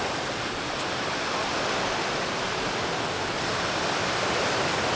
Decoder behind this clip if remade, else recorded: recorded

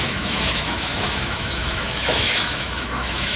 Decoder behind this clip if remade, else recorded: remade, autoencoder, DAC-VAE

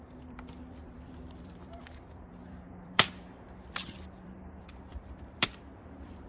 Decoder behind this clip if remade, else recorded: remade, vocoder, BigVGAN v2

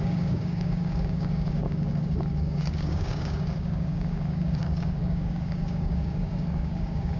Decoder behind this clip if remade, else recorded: remade, codec, DAC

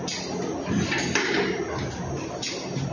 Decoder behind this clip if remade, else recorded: recorded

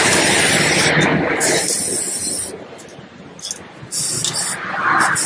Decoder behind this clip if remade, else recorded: recorded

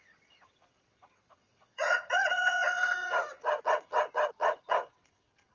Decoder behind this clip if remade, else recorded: remade, vocoder, WaveNeXt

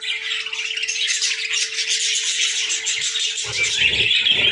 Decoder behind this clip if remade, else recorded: recorded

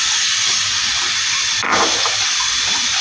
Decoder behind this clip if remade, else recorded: recorded